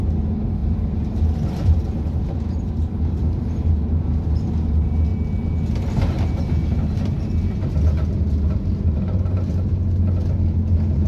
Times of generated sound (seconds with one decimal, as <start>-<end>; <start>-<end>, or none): 0.6-2.7; 3.2-3.7

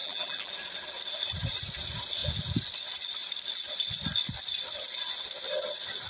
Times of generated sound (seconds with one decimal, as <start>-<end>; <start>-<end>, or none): 0.0-0.5

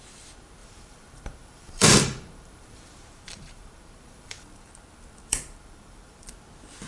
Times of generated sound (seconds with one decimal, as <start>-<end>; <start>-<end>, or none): 0.6-4.7; 5.3-6.3